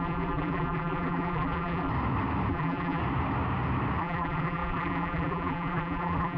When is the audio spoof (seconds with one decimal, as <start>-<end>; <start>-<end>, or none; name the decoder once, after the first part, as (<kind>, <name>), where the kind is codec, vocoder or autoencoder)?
0.0-1.9 (vocoder, BigVGAN v2); 2.5-3.0; 4.0-6.4